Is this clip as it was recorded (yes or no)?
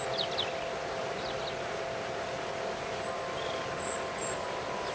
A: yes